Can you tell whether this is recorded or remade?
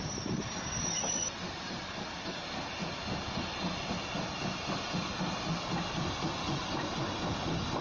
recorded